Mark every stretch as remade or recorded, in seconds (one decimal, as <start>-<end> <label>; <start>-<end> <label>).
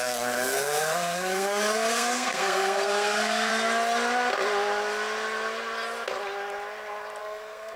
0.0-3.5 remade; 3.5-7.2 recorded; 7.2-7.8 remade